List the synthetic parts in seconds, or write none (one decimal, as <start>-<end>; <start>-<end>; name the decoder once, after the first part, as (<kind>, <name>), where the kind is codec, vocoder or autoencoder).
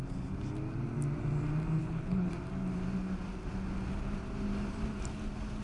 1.8-2.3 (codec, HILCodec)